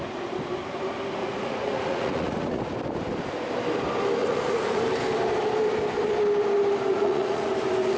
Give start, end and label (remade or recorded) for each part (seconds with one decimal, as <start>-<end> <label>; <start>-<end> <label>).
0.0-1.2 recorded; 1.2-2.6 remade; 2.6-4.2 recorded; 4.2-4.8 remade; 4.8-6.9 recorded; 6.9-7.5 remade; 7.5-8.0 recorded